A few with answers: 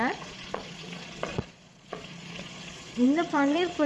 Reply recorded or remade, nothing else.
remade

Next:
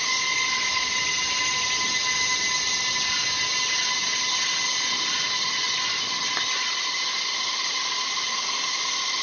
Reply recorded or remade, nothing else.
recorded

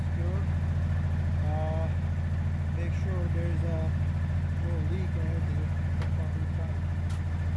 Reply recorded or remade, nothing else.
recorded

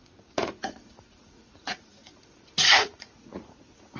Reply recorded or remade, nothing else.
remade